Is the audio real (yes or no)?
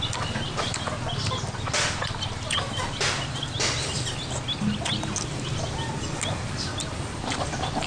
yes